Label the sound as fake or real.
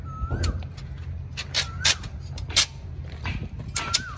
real